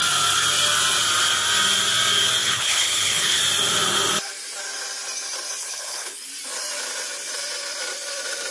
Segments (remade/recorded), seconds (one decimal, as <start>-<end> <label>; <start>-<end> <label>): 0.0-2.4 recorded; 2.4-3.4 remade; 3.4-5.6 recorded; 5.6-6.3 remade; 6.3-8.5 recorded

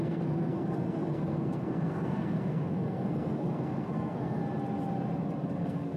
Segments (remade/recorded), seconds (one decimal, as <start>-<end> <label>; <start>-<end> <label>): 0.0-4.4 remade; 4.4-5.5 recorded; 5.5-6.0 remade

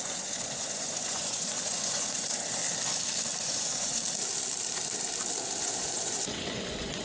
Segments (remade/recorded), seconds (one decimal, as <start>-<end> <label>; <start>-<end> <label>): 0.0-2.6 remade; 2.6-3.4 recorded; 3.4-4.0 remade; 4.0-5.6 recorded; 5.6-7.0 remade

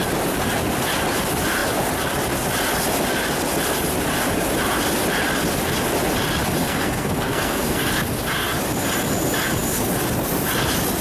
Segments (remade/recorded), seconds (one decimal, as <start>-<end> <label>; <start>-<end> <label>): 0.0-6.6 recorded; 6.6-7.9 remade; 7.9-11.0 recorded

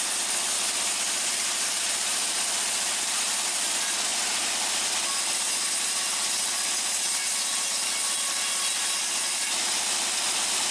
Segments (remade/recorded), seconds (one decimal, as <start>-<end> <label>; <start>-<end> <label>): 0.0-10.7 recorded